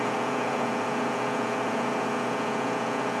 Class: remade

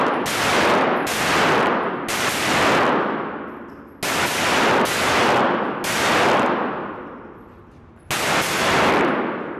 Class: recorded